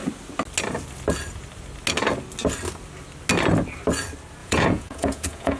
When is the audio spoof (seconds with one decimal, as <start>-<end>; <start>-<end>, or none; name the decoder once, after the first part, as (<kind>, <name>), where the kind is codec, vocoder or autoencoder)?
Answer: 4.4-5.6 (vocoder, Vocos)